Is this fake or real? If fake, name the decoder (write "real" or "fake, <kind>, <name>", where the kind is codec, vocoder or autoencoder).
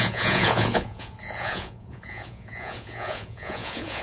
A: fake, vocoder, Vocos